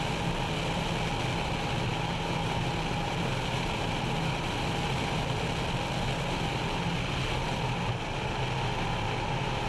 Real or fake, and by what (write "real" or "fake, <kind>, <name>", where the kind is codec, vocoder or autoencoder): real